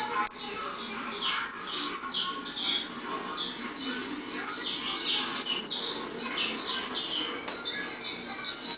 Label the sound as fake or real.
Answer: real